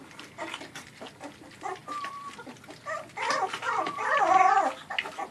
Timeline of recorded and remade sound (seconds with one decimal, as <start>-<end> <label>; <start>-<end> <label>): 0.0-5.3 recorded